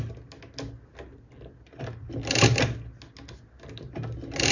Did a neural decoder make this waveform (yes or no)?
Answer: no